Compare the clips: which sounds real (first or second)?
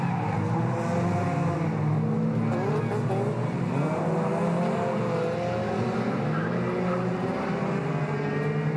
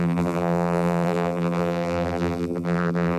first